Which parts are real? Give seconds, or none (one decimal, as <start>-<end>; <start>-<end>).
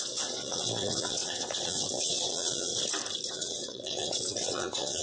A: 2.7-3.3